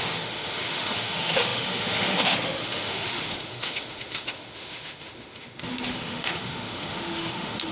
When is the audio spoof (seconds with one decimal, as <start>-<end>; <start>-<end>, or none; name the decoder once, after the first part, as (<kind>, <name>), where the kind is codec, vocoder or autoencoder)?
0.0-7.7 (autoencoder, DAC-VAE)